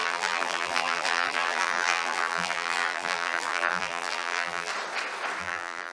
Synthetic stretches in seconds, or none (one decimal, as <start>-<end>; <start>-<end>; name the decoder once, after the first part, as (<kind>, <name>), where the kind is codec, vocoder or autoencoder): 0.0-4.7 (vocoder, BigVGAN v2); 5.4-5.9